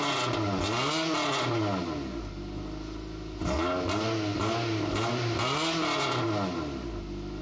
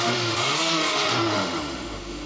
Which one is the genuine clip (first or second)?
first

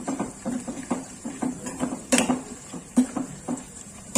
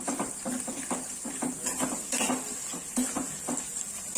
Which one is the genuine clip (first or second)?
second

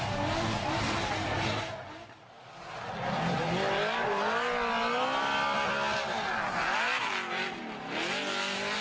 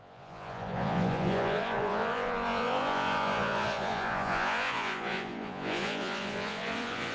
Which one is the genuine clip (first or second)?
first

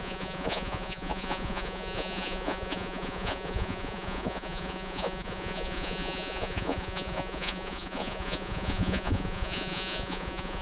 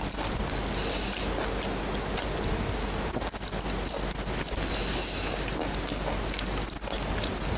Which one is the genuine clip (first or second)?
second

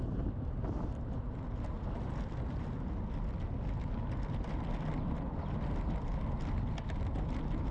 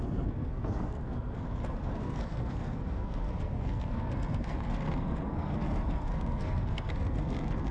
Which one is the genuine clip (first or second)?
first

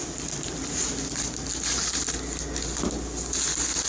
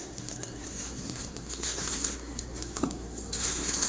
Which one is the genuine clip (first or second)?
first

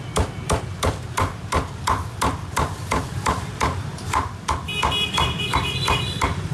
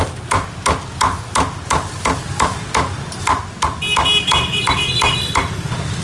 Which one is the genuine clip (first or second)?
second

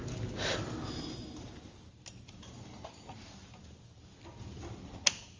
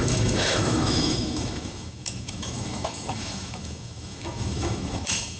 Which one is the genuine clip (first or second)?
first